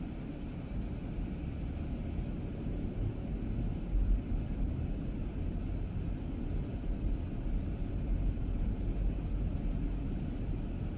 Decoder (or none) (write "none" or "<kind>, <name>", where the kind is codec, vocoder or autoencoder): none